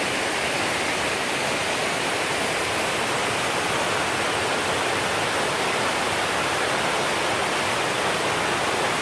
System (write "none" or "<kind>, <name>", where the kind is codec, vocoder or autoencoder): none